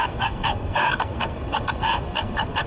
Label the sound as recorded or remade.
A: remade